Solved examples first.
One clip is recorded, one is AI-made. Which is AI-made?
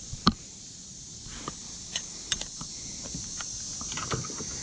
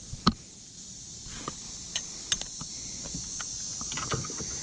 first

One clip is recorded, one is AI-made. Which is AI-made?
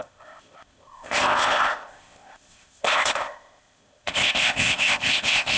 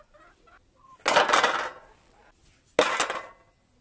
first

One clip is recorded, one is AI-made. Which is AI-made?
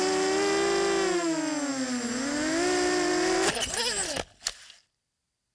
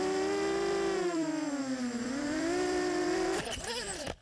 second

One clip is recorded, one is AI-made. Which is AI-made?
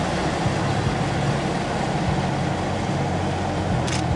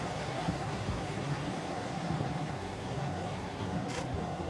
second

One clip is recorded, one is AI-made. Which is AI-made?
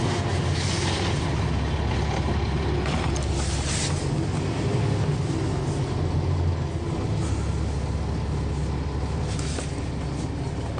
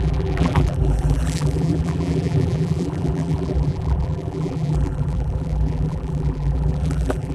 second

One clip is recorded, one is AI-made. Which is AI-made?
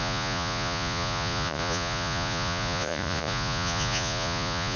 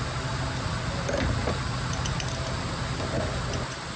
first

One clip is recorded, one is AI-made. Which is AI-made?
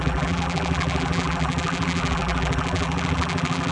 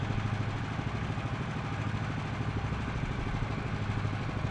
first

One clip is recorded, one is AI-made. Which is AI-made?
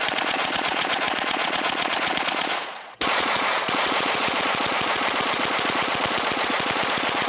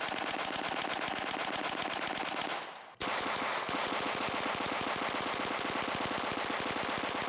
first